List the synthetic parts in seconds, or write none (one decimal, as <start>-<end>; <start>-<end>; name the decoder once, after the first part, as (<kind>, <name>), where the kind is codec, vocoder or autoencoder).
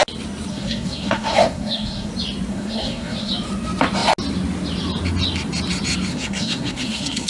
0.5-2.1 (codec, SNAC); 2.5-3.3; 6.1-7.3